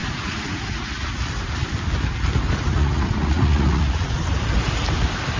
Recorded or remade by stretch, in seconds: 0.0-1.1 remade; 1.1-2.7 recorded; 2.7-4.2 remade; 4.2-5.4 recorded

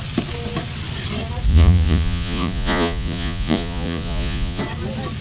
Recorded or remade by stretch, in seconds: 0.0-1.5 recorded; 1.5-4.6 remade; 4.6-5.2 recorded